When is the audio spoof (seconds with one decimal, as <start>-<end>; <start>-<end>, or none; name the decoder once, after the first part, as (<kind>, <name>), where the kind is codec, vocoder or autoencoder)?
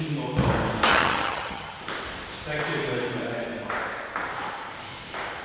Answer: 0.9-1.8 (vocoder, HiFi-GAN)